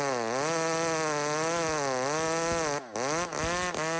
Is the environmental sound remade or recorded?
recorded